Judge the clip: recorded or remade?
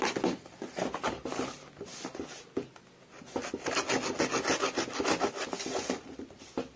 recorded